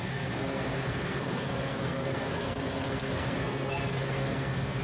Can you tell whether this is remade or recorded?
remade